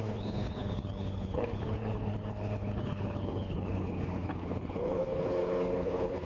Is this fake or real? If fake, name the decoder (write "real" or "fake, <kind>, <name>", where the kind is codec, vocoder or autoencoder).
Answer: fake, codec, HILCodec